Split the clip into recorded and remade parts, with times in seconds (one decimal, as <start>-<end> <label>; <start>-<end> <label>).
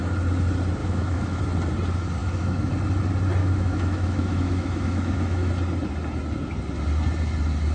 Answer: 0.0-0.8 recorded; 0.8-1.4 remade; 1.4-2.2 recorded; 2.2-2.7 remade; 2.7-3.4 recorded; 3.4-5.5 remade; 5.5-7.7 recorded